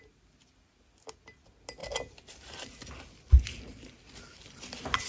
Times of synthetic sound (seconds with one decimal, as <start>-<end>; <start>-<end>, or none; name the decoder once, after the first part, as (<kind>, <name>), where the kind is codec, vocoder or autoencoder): none